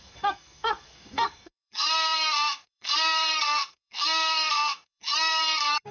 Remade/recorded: remade